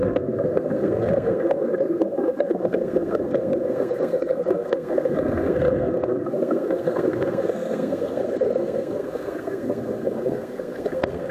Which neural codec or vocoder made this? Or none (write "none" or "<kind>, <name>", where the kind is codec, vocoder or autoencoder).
codec, SNAC